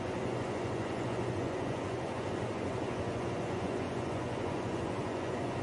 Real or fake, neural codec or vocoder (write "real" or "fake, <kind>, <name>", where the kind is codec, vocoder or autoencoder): fake, vocoder, Vocos